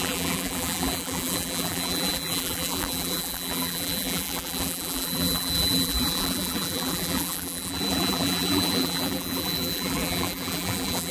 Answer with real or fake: fake